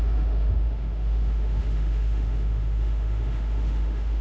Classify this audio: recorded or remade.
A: remade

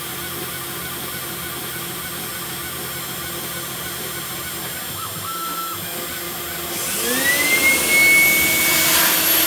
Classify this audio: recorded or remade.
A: recorded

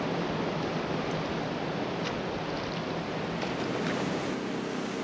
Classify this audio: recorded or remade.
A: recorded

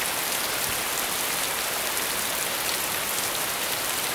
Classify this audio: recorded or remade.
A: recorded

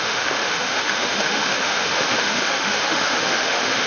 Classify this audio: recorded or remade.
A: remade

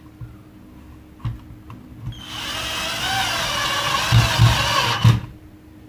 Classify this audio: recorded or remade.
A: recorded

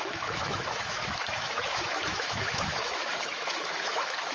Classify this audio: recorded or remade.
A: remade